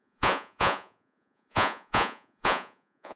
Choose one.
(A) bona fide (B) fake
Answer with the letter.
B